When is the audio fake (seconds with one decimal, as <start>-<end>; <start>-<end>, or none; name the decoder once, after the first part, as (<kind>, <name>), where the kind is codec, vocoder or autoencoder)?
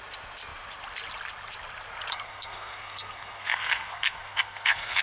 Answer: 2.1-5.0 (codec, SNAC)